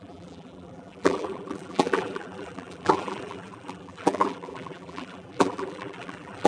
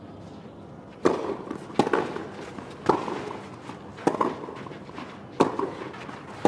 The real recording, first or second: second